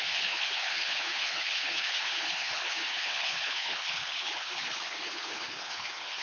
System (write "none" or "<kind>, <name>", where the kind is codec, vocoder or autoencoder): codec, HILCodec